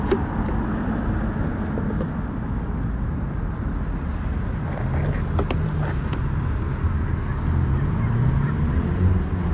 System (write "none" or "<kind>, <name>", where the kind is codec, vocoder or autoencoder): none